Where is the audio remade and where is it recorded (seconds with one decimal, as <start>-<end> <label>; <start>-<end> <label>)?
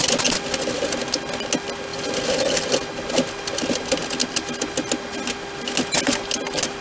0.0-6.8 recorded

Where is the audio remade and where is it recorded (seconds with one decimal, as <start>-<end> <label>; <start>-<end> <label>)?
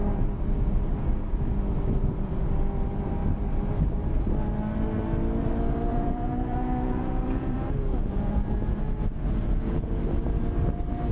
0.0-5.9 recorded; 5.9-10.0 remade; 10.0-11.1 recorded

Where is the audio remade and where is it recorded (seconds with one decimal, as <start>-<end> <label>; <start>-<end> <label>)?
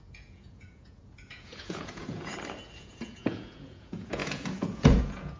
0.0-2.3 remade; 2.3-2.8 recorded; 2.8-5.4 remade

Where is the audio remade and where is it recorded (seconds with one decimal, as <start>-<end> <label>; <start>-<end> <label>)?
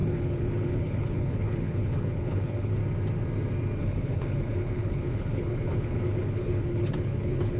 0.0-2.8 remade; 2.8-3.8 recorded; 3.8-7.6 remade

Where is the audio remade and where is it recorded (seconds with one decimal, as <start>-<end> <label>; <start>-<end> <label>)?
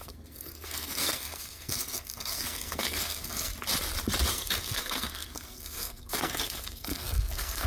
0.0-3.5 remade; 3.5-4.3 recorded; 4.3-7.7 remade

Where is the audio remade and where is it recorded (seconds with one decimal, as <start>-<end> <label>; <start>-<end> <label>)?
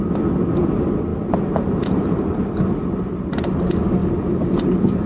0.0-1.1 recorded; 1.1-2.5 remade; 2.5-5.1 recorded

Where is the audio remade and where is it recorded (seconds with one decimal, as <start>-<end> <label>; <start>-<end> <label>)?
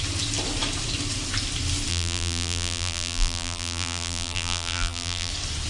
0.0-1.9 recorded; 1.9-5.3 remade; 5.3-5.7 recorded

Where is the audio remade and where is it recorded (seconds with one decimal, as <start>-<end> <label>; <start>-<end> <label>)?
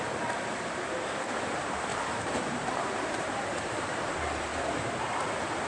0.0-1.9 recorded; 1.9-4.1 remade; 4.1-4.5 recorded; 4.5-5.3 remade; 5.3-5.7 recorded